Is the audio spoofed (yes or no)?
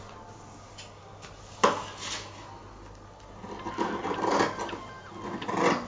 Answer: no